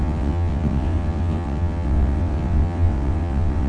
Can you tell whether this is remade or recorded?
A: remade